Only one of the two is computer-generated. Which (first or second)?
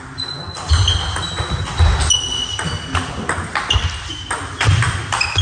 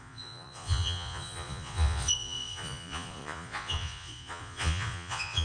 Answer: second